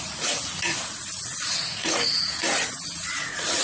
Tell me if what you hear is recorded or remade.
remade